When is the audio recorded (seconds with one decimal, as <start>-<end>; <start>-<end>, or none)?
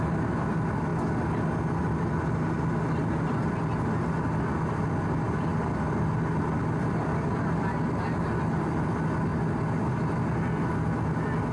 0.0-11.5